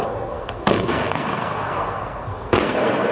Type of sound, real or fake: fake